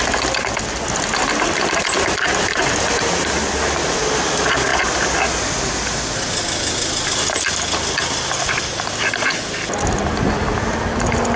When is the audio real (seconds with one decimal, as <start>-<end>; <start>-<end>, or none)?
0.0-11.4